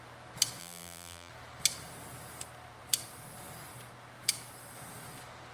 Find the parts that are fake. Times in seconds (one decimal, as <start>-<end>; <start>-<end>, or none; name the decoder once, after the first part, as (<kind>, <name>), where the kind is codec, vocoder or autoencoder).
0.6-1.3 (vocoder, BigVGAN v2)